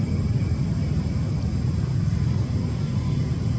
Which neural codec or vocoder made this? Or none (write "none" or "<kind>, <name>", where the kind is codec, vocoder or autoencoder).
none